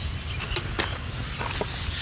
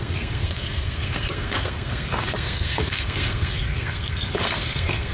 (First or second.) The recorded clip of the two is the first